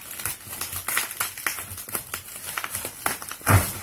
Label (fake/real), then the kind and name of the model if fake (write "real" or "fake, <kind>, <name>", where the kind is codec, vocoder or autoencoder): real